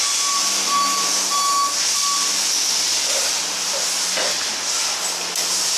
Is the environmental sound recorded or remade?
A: recorded